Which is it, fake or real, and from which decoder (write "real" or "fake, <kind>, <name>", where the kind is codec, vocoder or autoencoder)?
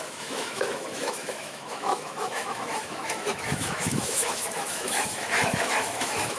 fake, autoencoder, DAC-VAE